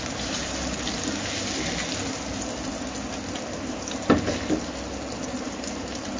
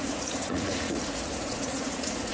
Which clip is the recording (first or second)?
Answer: first